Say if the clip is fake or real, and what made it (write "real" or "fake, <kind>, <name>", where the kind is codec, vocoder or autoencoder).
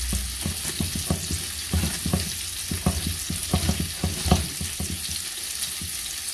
real